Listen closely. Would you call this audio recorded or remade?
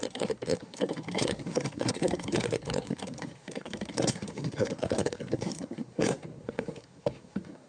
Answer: remade